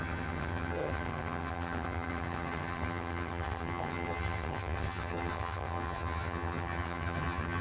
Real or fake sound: fake